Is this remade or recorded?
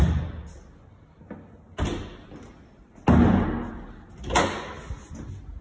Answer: recorded